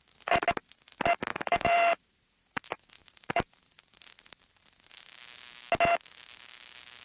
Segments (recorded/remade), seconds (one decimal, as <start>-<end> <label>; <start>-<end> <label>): 0.0-1.3 recorded; 1.3-2.6 remade; 2.6-3.0 recorded; 3.0-4.0 remade; 4.0-7.0 recorded